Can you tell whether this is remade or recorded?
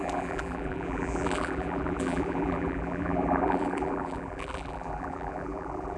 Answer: remade